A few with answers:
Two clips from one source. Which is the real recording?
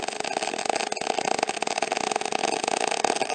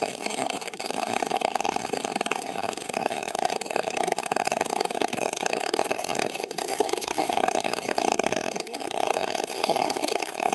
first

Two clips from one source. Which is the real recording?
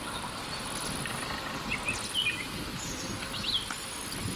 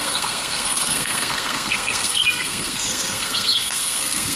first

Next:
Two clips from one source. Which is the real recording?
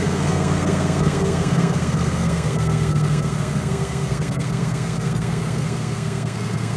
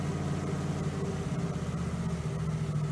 second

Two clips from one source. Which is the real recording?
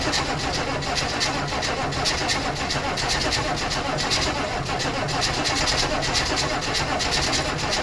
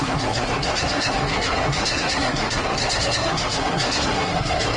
first